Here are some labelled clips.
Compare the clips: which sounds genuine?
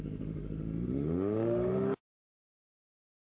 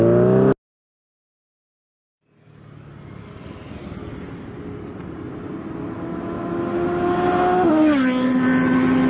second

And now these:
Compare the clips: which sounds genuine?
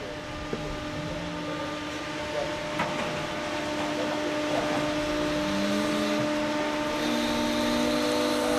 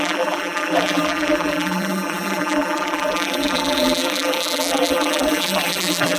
first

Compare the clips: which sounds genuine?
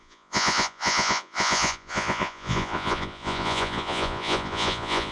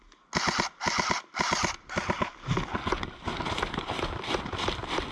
second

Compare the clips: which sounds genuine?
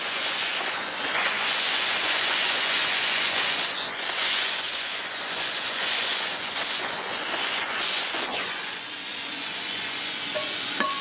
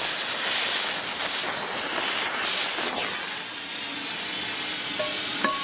second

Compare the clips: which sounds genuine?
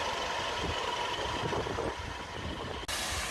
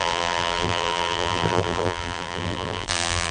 first